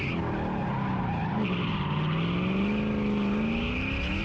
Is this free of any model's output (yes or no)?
yes